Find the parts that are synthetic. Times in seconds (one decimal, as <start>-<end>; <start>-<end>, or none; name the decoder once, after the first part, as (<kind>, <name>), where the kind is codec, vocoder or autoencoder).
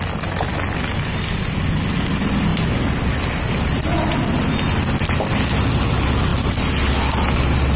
none